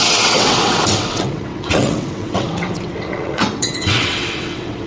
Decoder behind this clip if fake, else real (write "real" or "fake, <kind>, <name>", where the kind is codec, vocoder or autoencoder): fake, vocoder, WaveNeXt